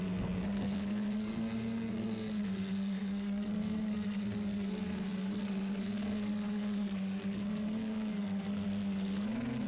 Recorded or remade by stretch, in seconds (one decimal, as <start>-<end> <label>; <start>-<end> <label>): 0.0-9.7 remade